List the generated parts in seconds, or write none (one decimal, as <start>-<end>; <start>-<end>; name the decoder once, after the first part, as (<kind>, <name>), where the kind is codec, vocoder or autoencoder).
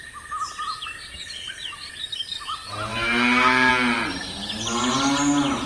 2.9-3.7 (autoencoder, DAC-VAE)